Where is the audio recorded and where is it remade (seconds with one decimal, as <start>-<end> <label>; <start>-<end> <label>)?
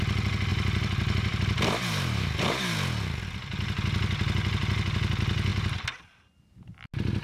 0.0-0.5 recorded; 0.5-2.6 remade; 2.6-7.2 recorded